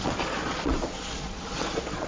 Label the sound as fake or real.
fake